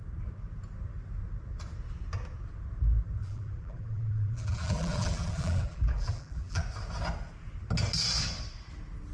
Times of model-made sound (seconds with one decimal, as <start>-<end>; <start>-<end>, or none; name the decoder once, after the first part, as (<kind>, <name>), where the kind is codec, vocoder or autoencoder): 3.2-6.6 (vocoder, BigVGAN v2)